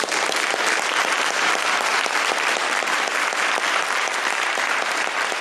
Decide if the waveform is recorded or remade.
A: recorded